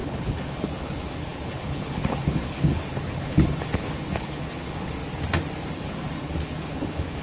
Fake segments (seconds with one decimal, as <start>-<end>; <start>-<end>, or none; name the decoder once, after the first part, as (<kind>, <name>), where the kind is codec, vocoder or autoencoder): 0.0-5.0 (codec, HILCodec); 5.7-7.2